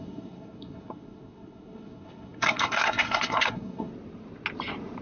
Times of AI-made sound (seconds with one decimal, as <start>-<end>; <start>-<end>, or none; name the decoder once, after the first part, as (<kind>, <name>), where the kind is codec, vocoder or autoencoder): 0.0-3.9 (codec, SNAC)

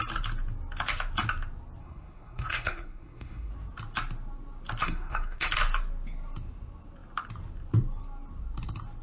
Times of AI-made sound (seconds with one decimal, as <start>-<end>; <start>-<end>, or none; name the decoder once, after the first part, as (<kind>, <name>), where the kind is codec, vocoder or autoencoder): 1.8-3.5 (codec, SNAC); 4.8-5.5

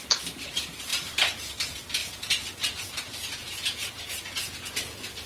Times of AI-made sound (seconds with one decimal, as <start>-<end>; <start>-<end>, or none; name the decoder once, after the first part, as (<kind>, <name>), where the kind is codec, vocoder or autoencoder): 2.0-5.3 (vocoder, Vocos)

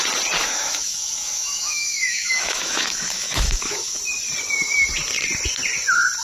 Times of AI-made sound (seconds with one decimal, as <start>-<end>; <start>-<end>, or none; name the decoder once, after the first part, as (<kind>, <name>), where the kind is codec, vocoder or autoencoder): 0.4-4.0 (autoencoder, DAC-VAE)

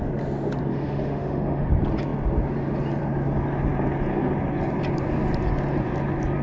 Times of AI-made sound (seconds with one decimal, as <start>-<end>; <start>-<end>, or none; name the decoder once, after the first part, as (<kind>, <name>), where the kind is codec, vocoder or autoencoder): 0.7-1.7 (autoencoder, DAC-VAE)